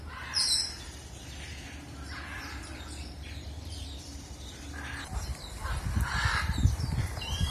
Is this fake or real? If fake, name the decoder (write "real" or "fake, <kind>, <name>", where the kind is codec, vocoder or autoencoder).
fake, vocoder, BigVGAN v2